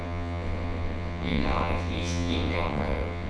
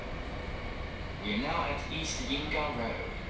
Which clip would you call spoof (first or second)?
first